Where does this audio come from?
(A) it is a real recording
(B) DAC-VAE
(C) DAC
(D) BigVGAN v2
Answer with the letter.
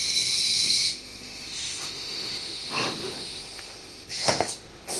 B